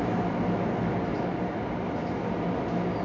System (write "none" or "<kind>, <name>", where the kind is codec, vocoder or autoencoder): none